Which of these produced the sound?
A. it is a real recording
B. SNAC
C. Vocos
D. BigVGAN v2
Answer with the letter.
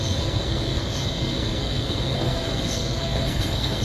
B